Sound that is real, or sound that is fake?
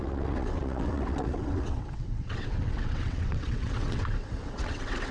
fake